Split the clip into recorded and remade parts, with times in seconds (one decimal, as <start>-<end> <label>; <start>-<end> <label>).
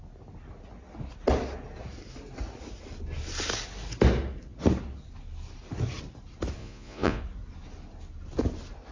0.0-6.6 recorded; 6.6-7.2 remade; 7.2-8.9 recorded